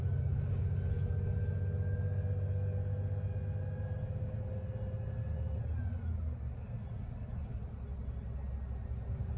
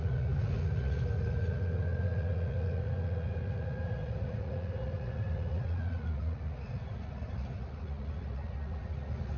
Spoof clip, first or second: second